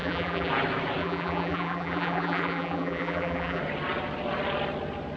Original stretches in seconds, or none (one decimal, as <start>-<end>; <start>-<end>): 0.5-1.0; 3.6-5.2